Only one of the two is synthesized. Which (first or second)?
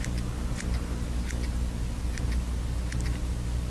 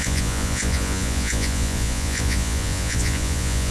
second